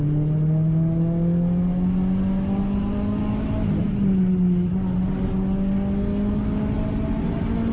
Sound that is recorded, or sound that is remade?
recorded